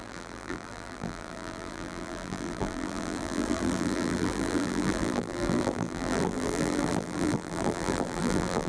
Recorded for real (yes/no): no